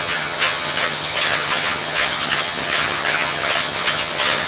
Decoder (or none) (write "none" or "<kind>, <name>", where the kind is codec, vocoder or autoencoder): vocoder, HiFi-GAN